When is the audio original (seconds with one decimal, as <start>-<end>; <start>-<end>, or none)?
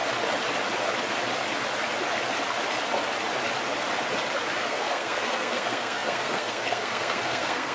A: 0.0-4.6